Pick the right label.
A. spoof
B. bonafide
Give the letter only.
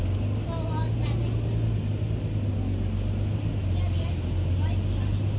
B